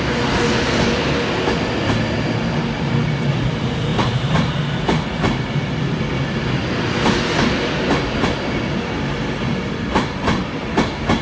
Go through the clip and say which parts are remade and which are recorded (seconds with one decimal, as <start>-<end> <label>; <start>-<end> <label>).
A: 0.0-3.9 recorded; 3.9-4.5 remade; 4.5-11.2 recorded